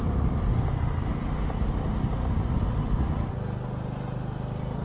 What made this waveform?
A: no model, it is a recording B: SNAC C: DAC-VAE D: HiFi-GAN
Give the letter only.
A